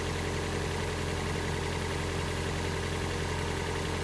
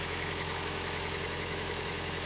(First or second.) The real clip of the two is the first